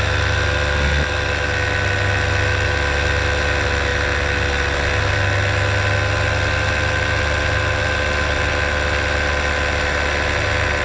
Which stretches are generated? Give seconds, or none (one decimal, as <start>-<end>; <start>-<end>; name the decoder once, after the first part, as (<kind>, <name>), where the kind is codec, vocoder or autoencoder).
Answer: none

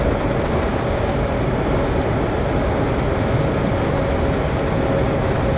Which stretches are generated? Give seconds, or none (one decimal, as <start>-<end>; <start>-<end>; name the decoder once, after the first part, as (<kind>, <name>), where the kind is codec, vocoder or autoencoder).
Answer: none

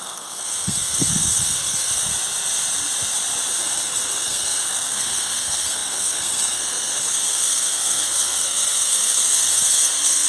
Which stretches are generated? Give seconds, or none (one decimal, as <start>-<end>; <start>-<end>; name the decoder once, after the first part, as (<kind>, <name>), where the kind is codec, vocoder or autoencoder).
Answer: 0.0-2.1 (codec, SNAC); 3.6-10.3

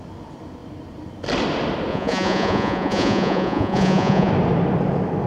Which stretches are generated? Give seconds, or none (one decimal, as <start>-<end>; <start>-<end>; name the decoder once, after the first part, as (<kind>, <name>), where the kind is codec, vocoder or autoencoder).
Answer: 1.9-4.3 (vocoder, Vocos)

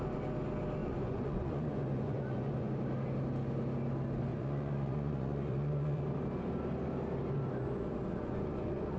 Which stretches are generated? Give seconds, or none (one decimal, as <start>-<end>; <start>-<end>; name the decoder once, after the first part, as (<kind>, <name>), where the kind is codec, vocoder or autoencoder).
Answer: 0.8-2.7 (vocoder, Vocos); 4.3-6.0; 8.1-9.0

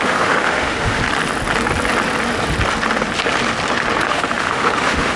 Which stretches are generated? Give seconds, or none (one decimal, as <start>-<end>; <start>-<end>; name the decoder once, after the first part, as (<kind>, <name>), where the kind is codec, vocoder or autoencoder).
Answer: 0.0-1.0 (autoencoder, DAC-VAE); 4.1-5.2

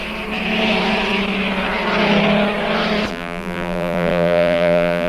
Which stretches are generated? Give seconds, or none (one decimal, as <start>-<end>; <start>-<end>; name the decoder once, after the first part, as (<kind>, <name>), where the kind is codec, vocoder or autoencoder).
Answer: 3.1-5.1 (vocoder, BigVGAN v2)